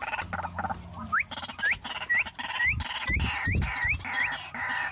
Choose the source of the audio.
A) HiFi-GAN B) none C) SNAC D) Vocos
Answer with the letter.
B